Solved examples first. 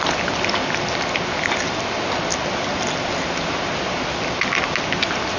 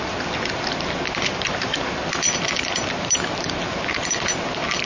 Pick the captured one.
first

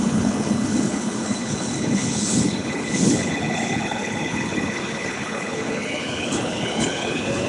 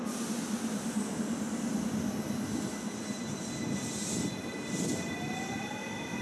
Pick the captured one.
second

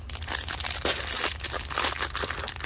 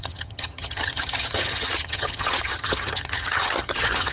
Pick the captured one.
first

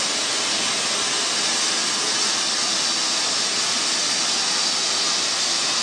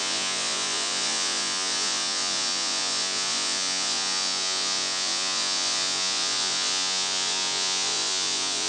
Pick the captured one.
first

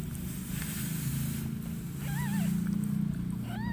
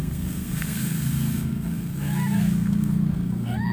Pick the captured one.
first